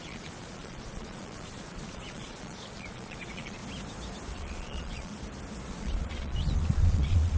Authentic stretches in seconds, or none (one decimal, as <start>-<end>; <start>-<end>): 3.6-4.3; 5.1-5.7